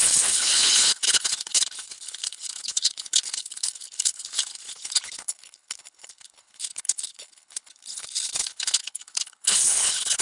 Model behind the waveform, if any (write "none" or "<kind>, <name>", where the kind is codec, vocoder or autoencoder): codec, HILCodec